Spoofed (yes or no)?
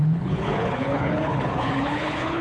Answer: yes